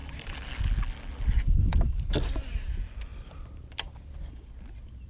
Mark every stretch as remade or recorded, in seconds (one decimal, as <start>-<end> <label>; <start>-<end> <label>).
0.0-0.6 remade; 0.6-1.7 recorded; 1.7-2.3 remade; 2.3-5.1 recorded

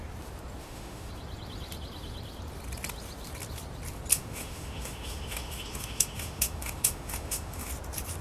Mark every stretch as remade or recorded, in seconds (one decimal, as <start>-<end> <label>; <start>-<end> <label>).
0.0-0.6 recorded; 0.6-1.1 remade; 1.1-4.1 recorded; 4.1-7.7 remade; 7.7-8.2 recorded

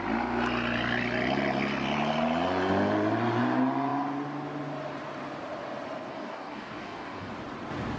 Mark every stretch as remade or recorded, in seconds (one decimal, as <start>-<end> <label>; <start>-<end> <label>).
0.0-6.1 recorded; 6.1-7.3 remade; 7.3-8.0 recorded

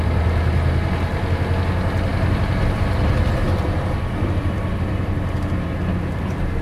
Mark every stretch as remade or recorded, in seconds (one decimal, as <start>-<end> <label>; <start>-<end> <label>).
0.0-2.1 recorded; 2.1-2.8 remade; 2.8-3.4 recorded; 3.4-5.7 remade; 5.7-6.6 recorded